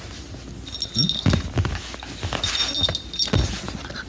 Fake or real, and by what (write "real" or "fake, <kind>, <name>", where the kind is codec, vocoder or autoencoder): real